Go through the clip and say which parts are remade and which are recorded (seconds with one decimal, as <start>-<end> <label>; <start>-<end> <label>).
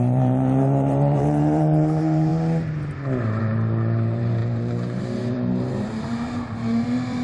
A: 0.0-2.3 remade; 2.3-3.4 recorded; 3.4-7.2 remade